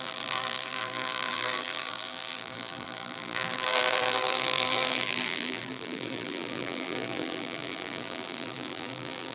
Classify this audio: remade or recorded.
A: remade